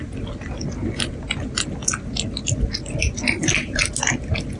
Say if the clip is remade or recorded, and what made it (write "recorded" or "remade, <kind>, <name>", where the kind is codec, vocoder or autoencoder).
recorded